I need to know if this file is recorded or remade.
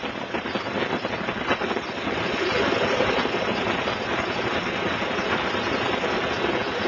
recorded